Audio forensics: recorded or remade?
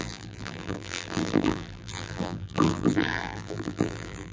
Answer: remade